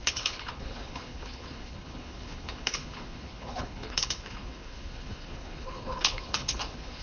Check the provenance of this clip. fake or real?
fake